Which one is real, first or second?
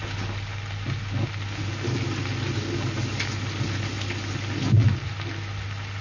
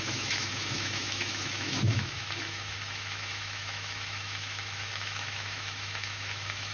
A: first